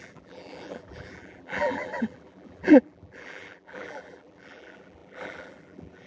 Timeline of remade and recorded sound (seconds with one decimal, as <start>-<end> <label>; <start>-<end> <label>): 0.0-6.1 remade